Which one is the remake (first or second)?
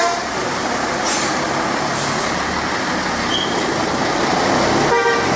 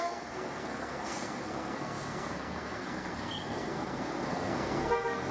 second